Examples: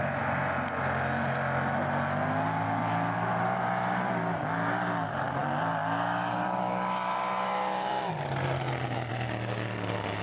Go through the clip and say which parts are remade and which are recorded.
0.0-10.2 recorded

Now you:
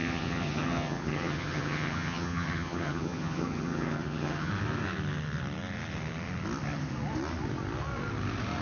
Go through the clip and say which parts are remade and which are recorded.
0.0-4.5 remade; 4.5-8.6 recorded

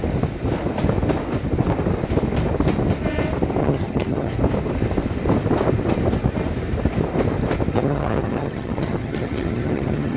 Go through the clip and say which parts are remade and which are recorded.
0.0-3.6 recorded; 3.6-4.3 remade; 4.3-7.7 recorded; 7.7-10.2 remade

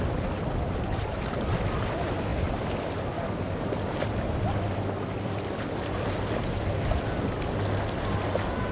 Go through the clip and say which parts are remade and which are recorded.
0.0-8.7 recorded

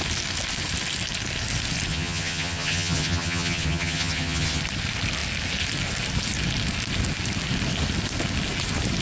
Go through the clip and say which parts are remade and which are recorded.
0.0-1.9 recorded; 1.9-4.6 remade; 4.6-9.0 recorded

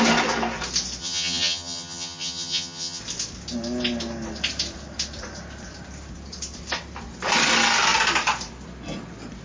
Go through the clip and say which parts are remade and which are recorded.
0.0-1.0 recorded; 1.0-3.0 remade; 3.0-9.4 recorded

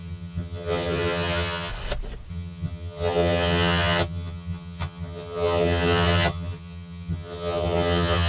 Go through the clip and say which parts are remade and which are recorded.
0.0-1.7 remade; 1.7-2.3 recorded; 2.3-8.3 remade